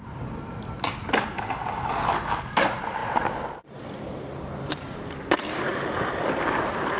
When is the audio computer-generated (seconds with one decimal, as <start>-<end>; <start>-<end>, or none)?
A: 3.0-5.8